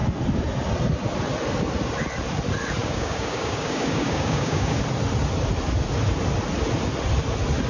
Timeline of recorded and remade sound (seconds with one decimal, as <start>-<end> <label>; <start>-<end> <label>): 0.0-2.8 recorded; 2.8-4.8 remade; 4.8-7.7 recorded

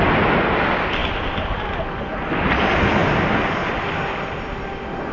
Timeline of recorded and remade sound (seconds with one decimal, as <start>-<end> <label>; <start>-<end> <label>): 0.0-5.1 recorded